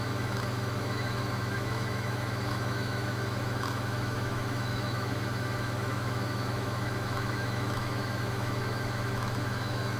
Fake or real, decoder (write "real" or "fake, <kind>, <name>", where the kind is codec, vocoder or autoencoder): fake, autoencoder, DAC-VAE